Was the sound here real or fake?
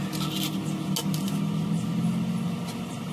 real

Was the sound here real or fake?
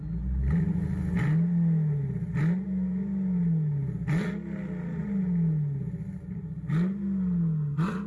real